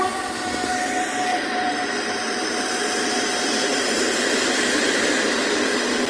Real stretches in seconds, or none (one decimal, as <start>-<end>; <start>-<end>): 0.0-1.3; 5.0-6.1